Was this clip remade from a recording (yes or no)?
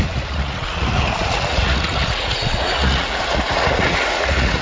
yes